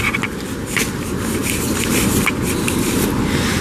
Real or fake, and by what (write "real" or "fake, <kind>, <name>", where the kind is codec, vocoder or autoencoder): real